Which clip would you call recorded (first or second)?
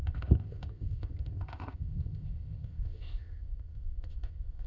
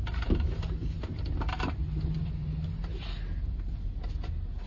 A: second